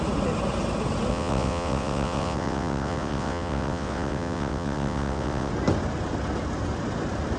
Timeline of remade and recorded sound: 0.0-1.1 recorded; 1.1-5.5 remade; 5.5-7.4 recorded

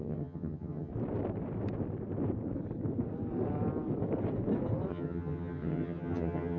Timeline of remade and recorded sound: 0.0-0.9 remade; 0.9-4.9 recorded; 4.9-6.6 remade